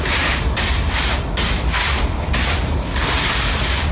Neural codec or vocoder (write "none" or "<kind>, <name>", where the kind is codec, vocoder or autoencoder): vocoder, BigVGAN v2